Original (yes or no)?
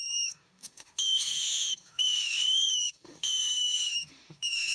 no